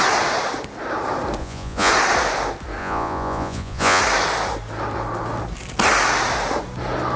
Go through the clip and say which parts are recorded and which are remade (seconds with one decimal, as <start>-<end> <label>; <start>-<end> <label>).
0.0-1.4 recorded; 1.4-1.9 remade; 1.9-2.8 recorded; 2.8-4.0 remade; 4.0-7.2 recorded